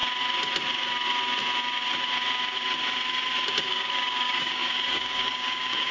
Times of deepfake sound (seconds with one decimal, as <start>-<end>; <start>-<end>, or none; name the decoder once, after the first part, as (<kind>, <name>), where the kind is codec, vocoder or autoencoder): 3.5-5.9 (codec, DAC)